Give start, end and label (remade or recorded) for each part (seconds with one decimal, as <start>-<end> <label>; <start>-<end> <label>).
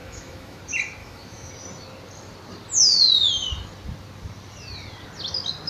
0.0-0.6 remade; 0.6-1.0 recorded; 1.0-1.5 remade; 1.5-5.7 recorded